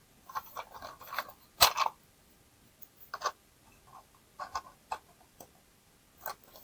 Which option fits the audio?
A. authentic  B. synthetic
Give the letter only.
A